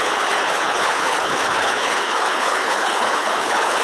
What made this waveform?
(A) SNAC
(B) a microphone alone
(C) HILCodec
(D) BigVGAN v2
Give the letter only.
C